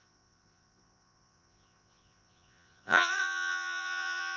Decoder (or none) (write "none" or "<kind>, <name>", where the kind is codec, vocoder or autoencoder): vocoder, Vocos